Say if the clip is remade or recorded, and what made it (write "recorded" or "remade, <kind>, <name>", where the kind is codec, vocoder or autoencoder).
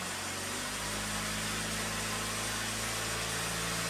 recorded